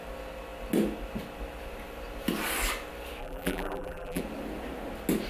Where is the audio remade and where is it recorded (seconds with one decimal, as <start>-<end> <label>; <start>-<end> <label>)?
0.0-3.2 recorded; 3.2-4.2 remade; 4.2-5.3 recorded